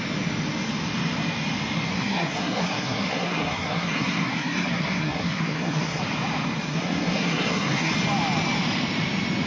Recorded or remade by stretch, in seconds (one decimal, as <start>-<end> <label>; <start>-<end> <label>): 0.0-1.9 recorded; 1.9-6.0 remade; 6.0-6.7 recorded; 6.7-7.9 remade; 7.9-9.5 recorded